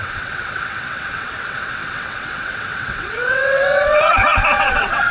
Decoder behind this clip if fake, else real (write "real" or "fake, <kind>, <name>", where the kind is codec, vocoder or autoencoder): fake, vocoder, WaveNeXt